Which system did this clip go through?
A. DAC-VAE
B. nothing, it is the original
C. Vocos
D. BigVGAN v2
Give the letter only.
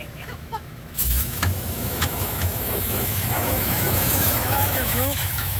A